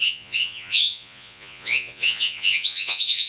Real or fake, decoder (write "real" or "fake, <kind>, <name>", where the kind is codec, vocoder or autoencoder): fake, vocoder, Vocos